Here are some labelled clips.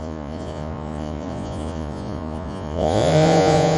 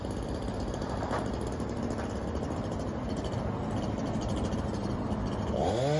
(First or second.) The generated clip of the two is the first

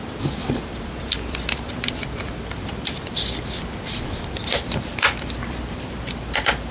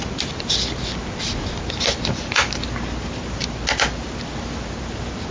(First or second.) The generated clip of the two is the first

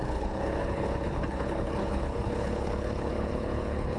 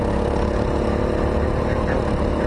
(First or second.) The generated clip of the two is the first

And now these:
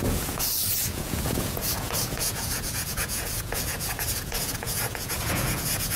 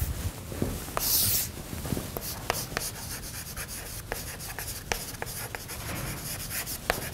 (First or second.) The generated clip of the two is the first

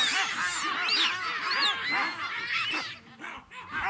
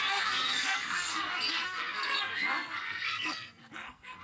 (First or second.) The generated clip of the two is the second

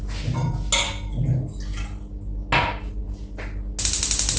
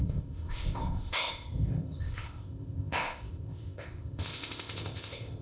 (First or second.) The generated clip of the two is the second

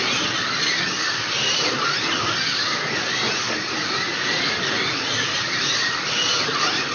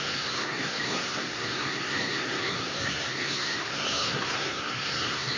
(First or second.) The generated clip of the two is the second